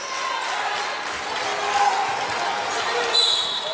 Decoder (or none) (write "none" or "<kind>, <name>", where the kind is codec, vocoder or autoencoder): none